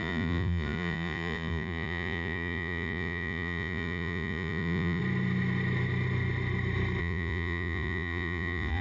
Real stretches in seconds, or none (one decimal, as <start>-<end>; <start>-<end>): 5.0-7.0